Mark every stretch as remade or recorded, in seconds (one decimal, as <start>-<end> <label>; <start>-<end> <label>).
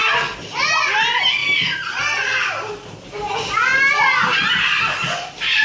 0.0-5.6 recorded